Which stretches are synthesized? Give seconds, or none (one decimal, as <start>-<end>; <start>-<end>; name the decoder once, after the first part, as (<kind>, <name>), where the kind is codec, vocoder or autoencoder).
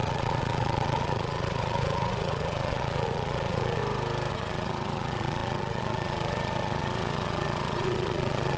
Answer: 0.0-3.8 (vocoder, Vocos); 4.3-8.6